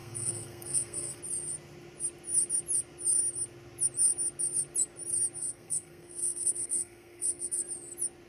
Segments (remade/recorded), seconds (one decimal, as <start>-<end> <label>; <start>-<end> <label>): 0.0-1.2 remade; 1.2-5.4 recorded; 5.4-7.6 remade; 7.6-8.3 recorded